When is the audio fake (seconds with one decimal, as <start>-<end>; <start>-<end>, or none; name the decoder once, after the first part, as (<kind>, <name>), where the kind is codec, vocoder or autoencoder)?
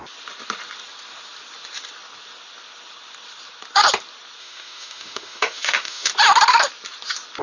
4.4-6.1 (autoencoder, DAC-VAE)